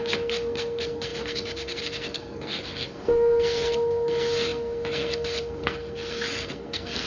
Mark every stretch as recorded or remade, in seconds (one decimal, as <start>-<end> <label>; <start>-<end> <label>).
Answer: 0.0-7.1 remade